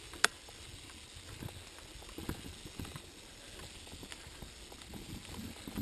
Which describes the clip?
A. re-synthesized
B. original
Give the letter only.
B